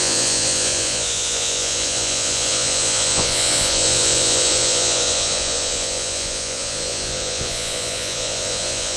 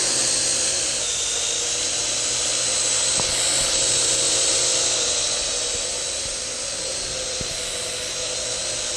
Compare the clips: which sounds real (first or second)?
second